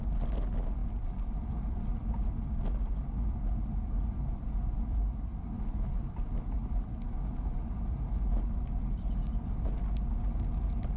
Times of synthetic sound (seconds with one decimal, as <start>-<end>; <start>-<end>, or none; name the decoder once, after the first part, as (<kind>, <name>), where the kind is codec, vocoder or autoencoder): none